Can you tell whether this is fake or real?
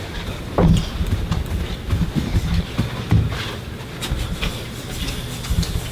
real